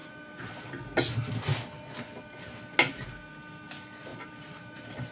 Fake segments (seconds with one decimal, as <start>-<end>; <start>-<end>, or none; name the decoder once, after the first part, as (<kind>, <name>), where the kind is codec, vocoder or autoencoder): 0.0-0.5 (vocoder, BigVGAN v2); 4.1-5.1